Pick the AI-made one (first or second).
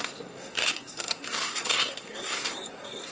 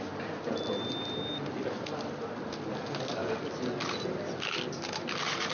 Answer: first